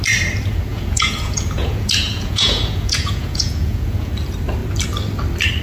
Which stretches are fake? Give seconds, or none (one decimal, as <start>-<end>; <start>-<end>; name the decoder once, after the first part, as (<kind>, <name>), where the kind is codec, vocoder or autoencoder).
0.7-4.1 (vocoder, Vocos)